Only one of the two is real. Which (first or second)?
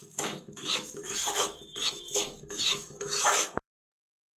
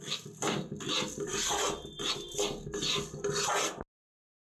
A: second